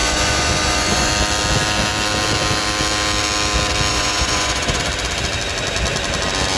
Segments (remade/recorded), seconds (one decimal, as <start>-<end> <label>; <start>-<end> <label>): 0.0-1.1 remade; 1.1-3.9 recorded; 3.9-4.8 remade; 4.8-6.6 recorded